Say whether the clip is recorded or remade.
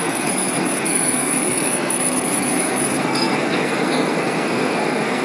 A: remade